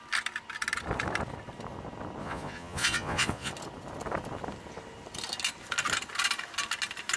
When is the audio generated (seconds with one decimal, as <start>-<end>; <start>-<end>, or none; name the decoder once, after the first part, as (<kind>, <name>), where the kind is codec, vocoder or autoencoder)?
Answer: 2.2-3.5 (vocoder, Vocos)